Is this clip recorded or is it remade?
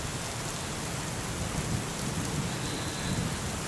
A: recorded